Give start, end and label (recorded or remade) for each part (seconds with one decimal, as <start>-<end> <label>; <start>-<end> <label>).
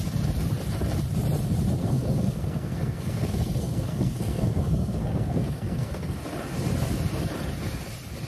0.0-1.8 recorded; 1.8-6.2 remade; 6.2-8.3 recorded